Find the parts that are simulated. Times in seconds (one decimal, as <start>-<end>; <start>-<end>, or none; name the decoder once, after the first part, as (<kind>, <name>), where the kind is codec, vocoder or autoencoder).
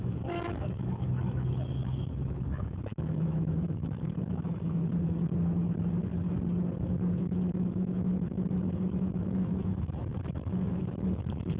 0.0-4.9 (autoencoder, DAC-VAE); 7.2-11.6